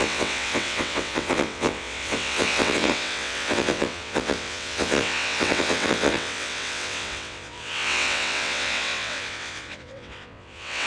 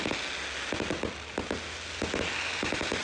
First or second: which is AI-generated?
first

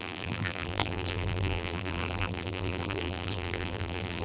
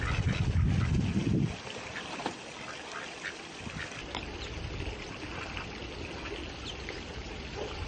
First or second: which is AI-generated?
first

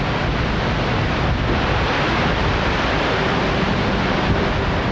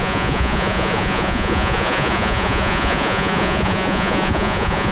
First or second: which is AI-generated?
second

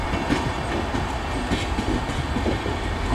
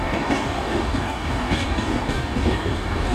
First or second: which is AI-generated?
second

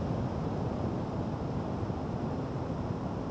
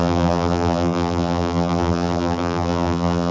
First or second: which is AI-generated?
second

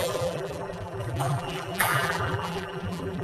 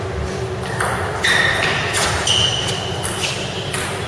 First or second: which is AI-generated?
first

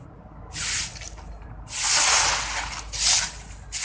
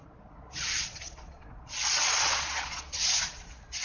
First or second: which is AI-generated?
second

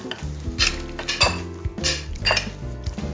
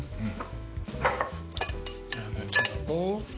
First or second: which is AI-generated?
second